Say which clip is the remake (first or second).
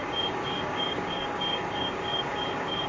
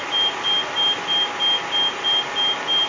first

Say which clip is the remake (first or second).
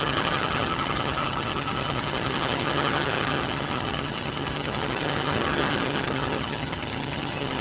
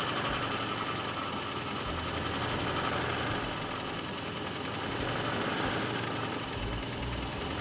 first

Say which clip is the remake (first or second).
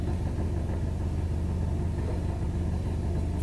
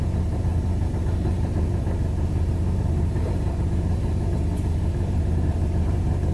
second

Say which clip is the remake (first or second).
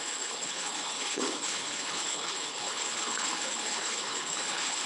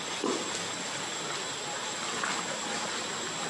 first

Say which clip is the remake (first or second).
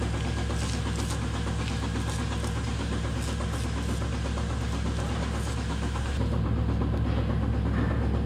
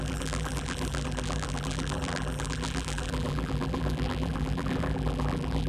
second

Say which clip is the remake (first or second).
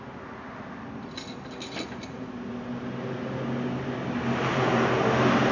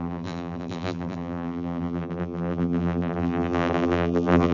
second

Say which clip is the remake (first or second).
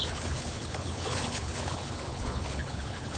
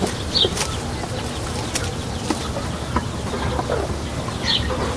first